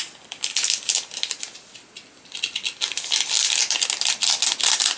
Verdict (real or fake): real